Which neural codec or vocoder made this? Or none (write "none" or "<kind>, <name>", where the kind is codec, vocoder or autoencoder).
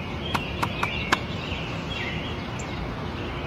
none